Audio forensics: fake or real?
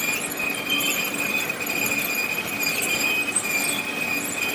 real